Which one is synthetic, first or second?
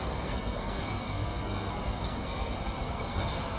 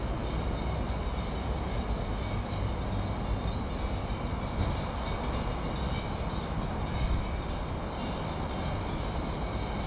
first